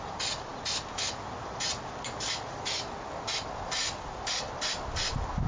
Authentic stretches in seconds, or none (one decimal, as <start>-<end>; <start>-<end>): 0.0-5.5